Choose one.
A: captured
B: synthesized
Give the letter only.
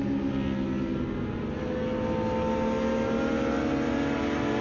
A